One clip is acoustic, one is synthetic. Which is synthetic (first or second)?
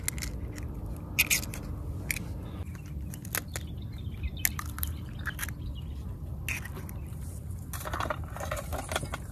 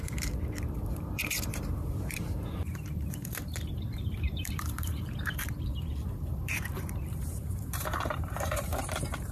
second